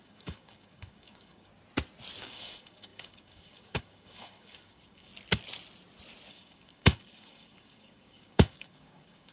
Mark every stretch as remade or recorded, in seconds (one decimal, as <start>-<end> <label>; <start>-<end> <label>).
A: 0.0-1.5 remade; 1.5-2.2 recorded; 2.2-5.1 remade; 5.1-6.3 recorded; 6.3-9.3 remade